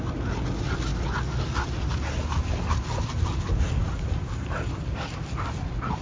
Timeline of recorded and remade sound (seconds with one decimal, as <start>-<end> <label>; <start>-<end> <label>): 0.0-6.0 recorded